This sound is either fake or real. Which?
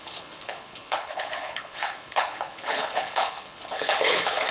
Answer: fake